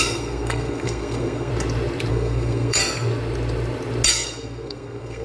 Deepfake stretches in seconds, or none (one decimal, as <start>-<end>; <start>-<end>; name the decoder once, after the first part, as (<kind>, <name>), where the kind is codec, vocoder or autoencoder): 0.0-1.5 (codec, SNAC); 2.1-2.8; 4.1-5.2